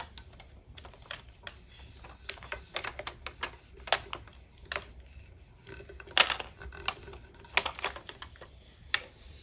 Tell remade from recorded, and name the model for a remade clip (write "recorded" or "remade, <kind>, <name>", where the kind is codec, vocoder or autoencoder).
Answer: recorded